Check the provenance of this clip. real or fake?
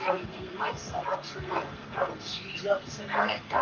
fake